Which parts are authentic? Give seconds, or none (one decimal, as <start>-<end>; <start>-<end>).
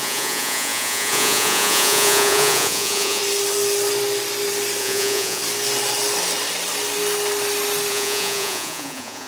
3.2-4.8; 5.4-7.9